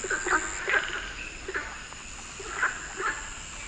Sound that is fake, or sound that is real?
real